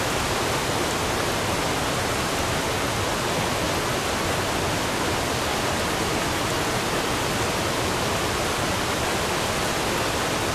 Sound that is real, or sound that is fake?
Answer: real